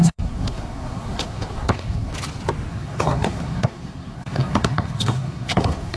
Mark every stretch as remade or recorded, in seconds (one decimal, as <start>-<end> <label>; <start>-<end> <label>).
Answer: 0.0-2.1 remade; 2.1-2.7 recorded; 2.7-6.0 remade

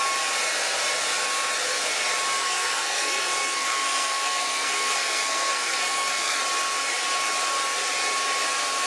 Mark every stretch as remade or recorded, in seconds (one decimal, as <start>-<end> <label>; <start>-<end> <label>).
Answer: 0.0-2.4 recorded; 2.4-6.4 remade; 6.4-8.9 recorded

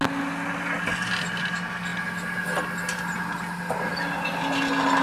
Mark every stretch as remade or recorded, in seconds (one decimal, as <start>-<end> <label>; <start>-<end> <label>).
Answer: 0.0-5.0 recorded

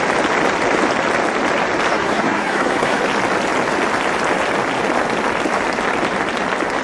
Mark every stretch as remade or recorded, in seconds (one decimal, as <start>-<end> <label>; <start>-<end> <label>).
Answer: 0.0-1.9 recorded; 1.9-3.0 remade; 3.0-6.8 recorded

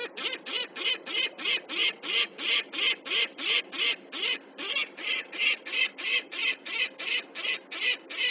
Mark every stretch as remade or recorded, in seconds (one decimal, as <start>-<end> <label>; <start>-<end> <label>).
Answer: 0.0-1.8 recorded; 1.8-3.6 remade; 3.6-8.3 recorded